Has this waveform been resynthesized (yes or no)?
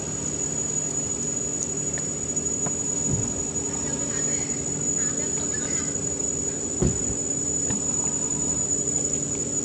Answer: no